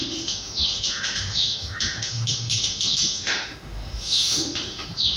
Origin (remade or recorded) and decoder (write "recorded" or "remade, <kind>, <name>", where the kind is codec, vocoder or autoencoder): remade, autoencoder, DAC-VAE